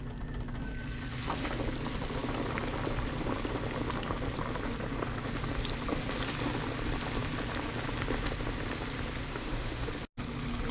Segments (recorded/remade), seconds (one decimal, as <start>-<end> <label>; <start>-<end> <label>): 0.0-9.3 recorded; 9.3-9.9 remade; 9.9-10.7 recorded